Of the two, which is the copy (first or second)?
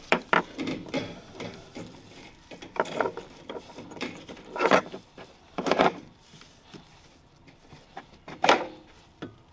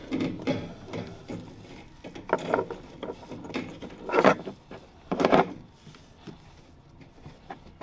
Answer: first